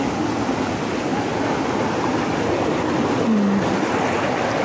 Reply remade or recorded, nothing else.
recorded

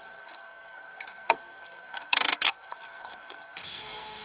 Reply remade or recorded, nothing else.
remade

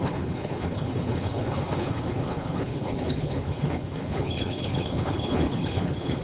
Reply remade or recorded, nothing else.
remade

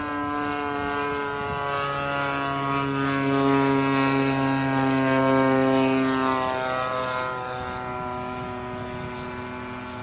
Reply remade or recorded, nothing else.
recorded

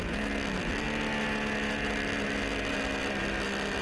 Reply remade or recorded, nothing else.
recorded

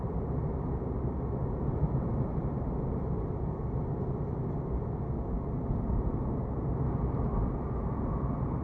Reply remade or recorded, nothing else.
recorded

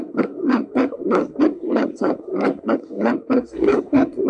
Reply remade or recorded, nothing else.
remade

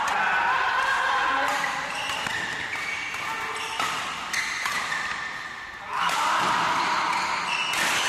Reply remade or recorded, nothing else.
recorded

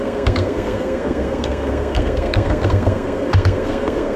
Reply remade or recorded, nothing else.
remade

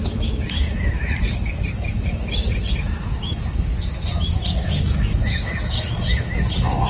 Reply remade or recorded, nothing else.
remade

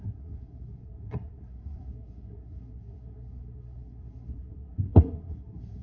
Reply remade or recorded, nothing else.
remade